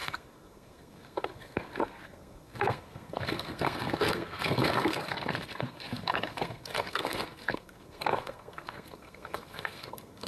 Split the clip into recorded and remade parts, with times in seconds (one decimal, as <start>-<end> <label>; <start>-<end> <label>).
0.0-10.3 remade

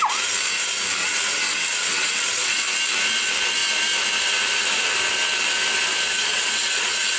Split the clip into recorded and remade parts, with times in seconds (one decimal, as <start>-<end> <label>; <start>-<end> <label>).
0.0-1.0 recorded; 1.0-2.6 remade; 2.6-6.3 recorded; 6.3-7.2 remade